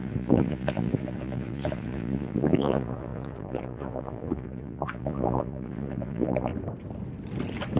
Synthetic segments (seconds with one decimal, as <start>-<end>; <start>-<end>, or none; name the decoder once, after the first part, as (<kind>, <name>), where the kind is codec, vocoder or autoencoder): 0.0-6.5 (vocoder, Vocos)